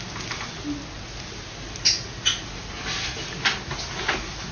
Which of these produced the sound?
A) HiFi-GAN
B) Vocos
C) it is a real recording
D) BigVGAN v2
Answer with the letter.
C